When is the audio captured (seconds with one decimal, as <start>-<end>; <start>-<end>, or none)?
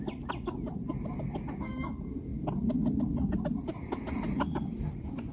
0.0-5.3